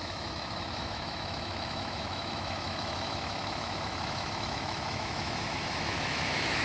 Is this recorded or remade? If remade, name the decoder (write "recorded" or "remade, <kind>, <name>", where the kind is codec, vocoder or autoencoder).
remade, autoencoder, DAC-VAE